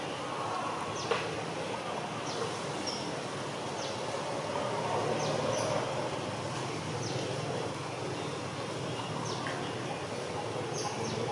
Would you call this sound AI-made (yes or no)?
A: no